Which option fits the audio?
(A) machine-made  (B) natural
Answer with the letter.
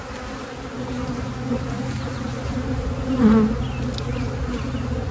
B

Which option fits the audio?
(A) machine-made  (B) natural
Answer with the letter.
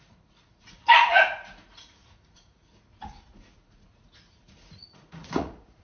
A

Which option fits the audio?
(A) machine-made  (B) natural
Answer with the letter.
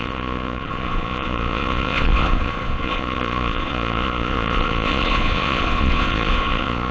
A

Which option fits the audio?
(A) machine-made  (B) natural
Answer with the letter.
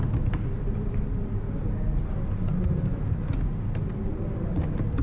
B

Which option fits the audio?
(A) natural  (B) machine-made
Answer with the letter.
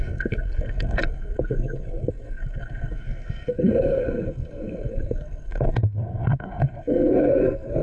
B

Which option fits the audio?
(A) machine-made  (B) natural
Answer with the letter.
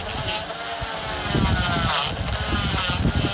B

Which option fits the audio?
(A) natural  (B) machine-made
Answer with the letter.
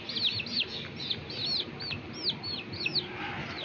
A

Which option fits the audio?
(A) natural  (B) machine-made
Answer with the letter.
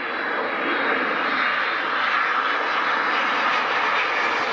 A